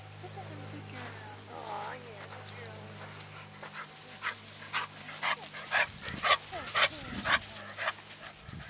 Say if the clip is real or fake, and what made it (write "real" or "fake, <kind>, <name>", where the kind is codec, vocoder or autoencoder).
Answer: real